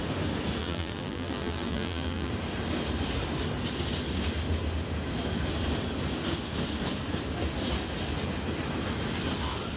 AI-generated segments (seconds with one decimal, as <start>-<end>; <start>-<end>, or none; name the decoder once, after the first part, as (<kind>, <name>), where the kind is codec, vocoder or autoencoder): 0.6-2.3 (vocoder, BigVGAN v2)